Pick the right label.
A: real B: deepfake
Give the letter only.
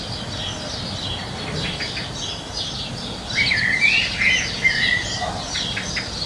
A